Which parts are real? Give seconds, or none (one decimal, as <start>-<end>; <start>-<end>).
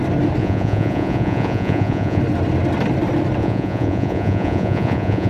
0.0-0.4; 2.2-3.4